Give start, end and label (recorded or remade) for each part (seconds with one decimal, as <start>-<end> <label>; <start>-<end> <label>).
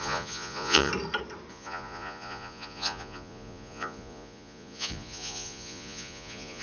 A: 0.0-0.9 remade; 0.9-1.5 recorded; 1.5-6.6 remade